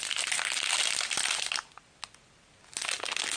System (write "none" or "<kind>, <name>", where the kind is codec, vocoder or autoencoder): none